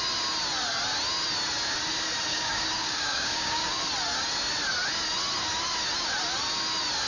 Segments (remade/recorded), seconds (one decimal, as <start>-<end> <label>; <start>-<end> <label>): 0.0-2.3 recorded; 2.3-3.8 remade; 3.8-7.1 recorded